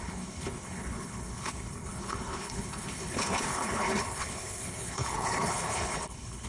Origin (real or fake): fake